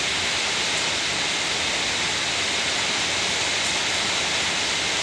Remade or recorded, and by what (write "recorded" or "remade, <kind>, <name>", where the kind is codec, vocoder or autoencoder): recorded